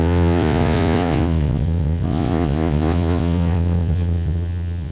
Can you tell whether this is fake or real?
fake